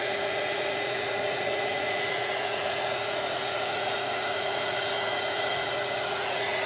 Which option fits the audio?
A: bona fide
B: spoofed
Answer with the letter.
B